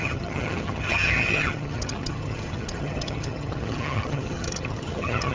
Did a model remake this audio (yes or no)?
yes